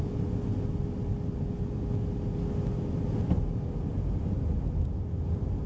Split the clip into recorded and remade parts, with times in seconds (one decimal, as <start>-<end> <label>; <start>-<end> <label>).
0.0-5.7 recorded